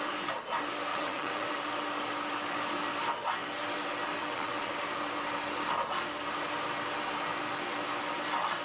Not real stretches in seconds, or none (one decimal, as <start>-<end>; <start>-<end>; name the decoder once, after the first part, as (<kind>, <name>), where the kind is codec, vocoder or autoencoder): 0.9-1.5 (vocoder, WaveNeXt); 4.2-4.7

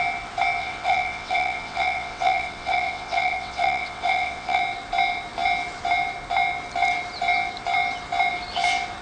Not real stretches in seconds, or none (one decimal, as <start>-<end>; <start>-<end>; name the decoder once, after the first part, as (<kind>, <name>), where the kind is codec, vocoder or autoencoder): 0.6-4.6 (vocoder, WaveNeXt)

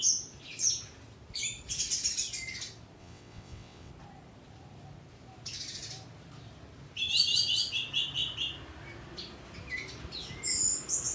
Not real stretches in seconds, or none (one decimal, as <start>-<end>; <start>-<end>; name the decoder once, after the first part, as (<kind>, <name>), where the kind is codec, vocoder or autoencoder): 3.0-3.9 (vocoder, WaveNeXt)

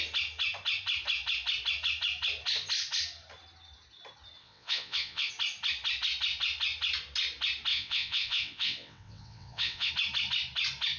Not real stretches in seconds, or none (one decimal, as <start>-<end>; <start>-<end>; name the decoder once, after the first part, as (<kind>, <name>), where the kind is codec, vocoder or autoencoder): 4.4-5.3 (vocoder, WaveNeXt); 7.7-9.9

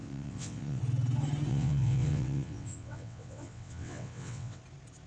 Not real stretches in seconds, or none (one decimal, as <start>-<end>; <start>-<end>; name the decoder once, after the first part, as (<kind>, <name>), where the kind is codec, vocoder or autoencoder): 0.0-0.8 (vocoder, WaveNeXt); 1.5-4.6

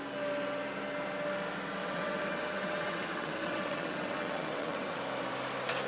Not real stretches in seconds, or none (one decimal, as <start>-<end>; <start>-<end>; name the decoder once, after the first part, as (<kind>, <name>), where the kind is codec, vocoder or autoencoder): 1.8-5.0 (vocoder, WaveNeXt)

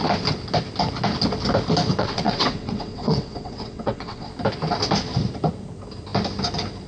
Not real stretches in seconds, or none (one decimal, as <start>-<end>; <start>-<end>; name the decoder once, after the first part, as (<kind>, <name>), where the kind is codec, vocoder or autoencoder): 2.0-4.3 (vocoder, WaveNeXt)

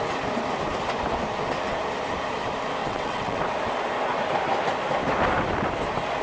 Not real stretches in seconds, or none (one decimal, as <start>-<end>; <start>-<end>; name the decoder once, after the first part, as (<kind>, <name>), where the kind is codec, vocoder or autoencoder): 2.8-3.4 (vocoder, WaveNeXt)